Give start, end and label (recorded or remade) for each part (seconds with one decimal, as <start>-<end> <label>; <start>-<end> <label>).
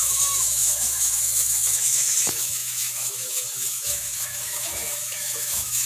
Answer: 0.0-5.9 remade